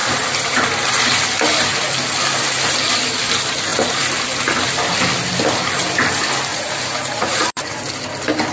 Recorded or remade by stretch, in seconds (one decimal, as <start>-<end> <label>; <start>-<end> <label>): 0.0-6.5 recorded; 6.5-7.8 remade; 7.8-8.5 recorded